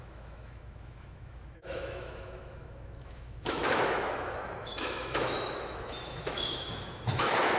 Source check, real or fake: fake